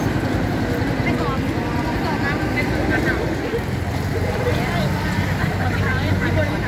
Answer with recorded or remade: recorded